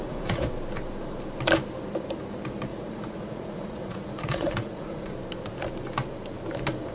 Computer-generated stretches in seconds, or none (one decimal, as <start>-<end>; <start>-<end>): 0.0-0.5; 2.7-5.1